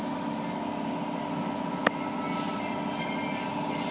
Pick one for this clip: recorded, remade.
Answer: recorded